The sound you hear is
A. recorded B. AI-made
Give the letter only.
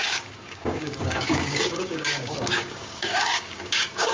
B